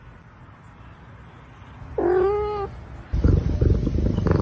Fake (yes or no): no